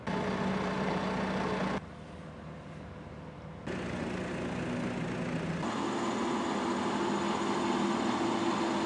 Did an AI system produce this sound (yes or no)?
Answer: no